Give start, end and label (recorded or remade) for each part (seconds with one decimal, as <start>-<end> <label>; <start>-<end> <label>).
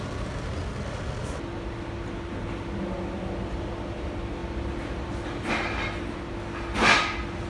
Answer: 0.0-7.5 recorded